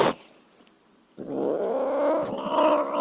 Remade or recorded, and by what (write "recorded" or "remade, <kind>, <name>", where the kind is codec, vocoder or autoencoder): recorded